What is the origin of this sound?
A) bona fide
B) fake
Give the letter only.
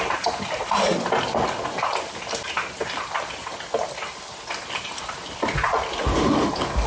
A